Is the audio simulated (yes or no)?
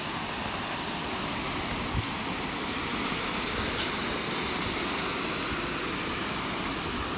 no